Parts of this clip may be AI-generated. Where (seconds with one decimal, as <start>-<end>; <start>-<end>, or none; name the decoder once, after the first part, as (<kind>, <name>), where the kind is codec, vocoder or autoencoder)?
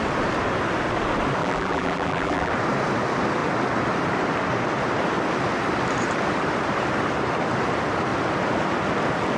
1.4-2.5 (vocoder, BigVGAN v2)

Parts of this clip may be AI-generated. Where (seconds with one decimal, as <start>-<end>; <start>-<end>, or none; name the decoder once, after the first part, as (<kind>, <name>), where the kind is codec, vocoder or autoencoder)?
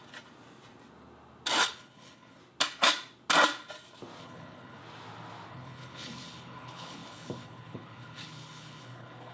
1.6-2.4 (codec, HILCodec); 4.2-4.8; 5.5-9.3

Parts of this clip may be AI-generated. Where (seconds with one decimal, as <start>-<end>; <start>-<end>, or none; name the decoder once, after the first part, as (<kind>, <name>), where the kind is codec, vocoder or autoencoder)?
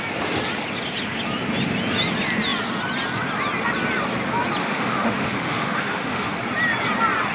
4.6-6.3 (autoencoder, DAC-VAE)